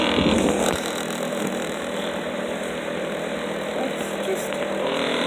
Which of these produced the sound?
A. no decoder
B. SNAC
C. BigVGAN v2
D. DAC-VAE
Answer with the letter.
C